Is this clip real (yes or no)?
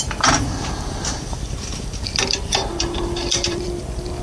no